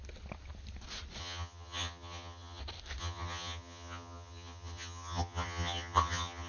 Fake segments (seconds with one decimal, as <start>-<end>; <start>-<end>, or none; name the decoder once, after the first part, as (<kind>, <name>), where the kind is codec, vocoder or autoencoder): 1.2-2.6 (vocoder, HiFi-GAN); 3.0-6.5